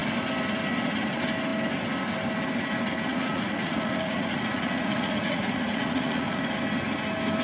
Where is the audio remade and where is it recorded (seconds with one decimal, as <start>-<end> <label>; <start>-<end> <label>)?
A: 0.0-3.1 recorded; 3.1-6.4 remade; 6.4-7.4 recorded